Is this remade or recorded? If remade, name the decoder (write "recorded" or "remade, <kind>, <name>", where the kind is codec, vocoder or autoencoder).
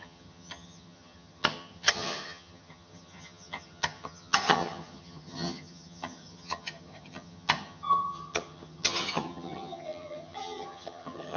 remade, vocoder, HiFi-GAN